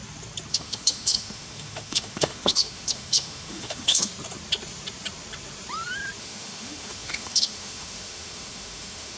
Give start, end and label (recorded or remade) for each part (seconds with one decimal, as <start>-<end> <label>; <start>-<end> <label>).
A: 0.0-0.5 recorded; 0.5-4.1 remade; 4.1-6.2 recorded; 6.2-9.2 remade